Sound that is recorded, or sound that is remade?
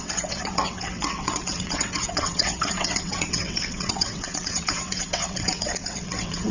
remade